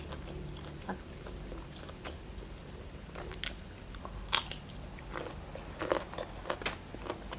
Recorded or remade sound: recorded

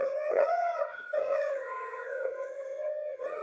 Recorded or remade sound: remade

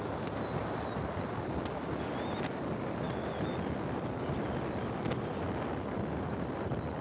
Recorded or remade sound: recorded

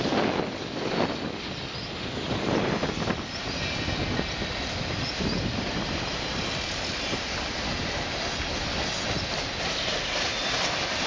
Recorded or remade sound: recorded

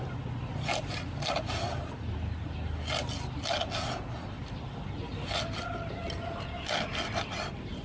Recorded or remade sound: recorded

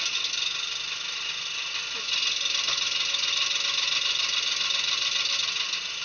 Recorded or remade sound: recorded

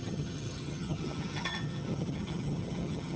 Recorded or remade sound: remade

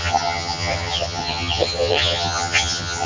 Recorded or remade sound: remade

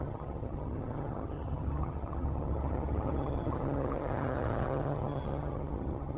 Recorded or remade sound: remade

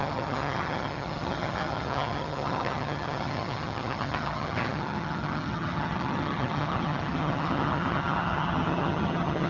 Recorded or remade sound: remade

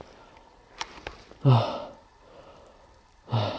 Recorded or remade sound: recorded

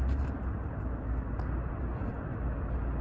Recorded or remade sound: recorded